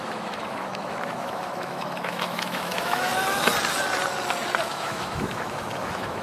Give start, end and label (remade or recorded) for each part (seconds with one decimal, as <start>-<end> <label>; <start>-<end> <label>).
0.0-3.1 remade; 3.1-4.7 recorded; 4.7-6.2 remade